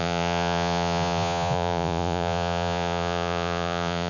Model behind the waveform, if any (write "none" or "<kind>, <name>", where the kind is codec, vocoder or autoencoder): vocoder, Vocos